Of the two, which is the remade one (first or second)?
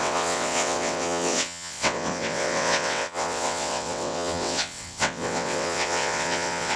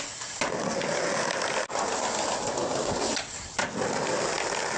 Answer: first